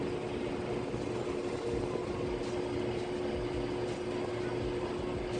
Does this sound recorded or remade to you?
recorded